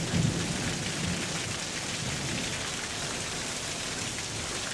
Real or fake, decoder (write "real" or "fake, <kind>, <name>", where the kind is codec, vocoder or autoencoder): real